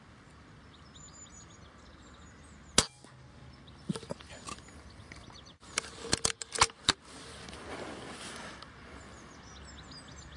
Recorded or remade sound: recorded